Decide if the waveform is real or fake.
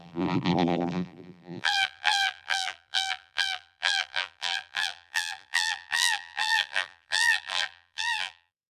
fake